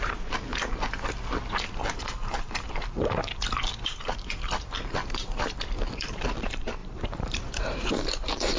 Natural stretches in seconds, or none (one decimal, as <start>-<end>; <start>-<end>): 0.5-2.0; 3.2-4.0